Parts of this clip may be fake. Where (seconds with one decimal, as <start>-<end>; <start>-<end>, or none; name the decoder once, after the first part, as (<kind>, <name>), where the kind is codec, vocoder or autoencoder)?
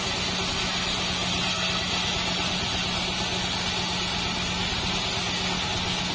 none